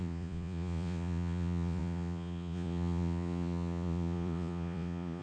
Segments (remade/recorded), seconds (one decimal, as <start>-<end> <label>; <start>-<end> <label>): 0.0-5.2 remade